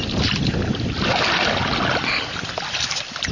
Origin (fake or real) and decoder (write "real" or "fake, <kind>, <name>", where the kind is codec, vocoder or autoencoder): real